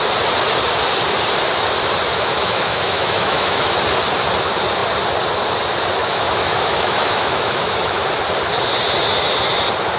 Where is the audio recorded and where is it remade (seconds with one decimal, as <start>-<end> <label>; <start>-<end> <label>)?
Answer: 0.0-2.1 recorded; 2.1-3.7 remade; 3.7-6.0 recorded; 6.0-8.0 remade; 8.0-10.0 recorded